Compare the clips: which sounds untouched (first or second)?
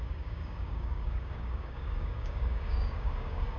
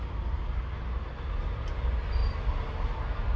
second